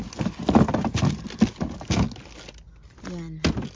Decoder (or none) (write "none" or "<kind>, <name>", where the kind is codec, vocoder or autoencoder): none